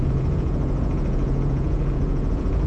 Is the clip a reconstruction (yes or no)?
yes